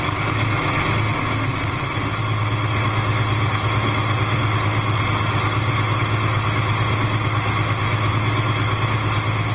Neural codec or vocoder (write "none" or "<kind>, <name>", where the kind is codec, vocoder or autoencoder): none